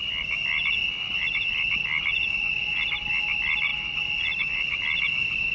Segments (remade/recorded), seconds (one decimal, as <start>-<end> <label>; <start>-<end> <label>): 0.0-5.5 recorded